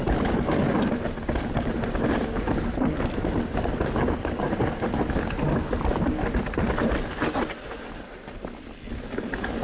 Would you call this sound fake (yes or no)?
no